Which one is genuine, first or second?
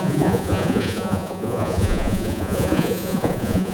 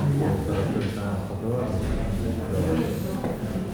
second